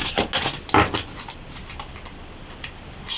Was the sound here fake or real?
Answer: real